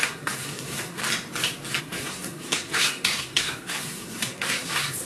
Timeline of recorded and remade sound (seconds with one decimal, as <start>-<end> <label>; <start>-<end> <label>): 0.0-1.0 remade; 1.0-1.8 recorded; 1.8-5.0 remade